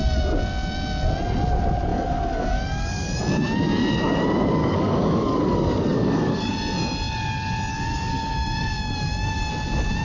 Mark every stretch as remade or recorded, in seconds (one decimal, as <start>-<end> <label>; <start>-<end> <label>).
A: 0.0-1.9 recorded; 1.9-3.2 remade; 3.2-4.6 recorded; 4.6-6.5 remade; 6.5-7.7 recorded; 7.7-9.5 remade; 9.5-10.0 recorded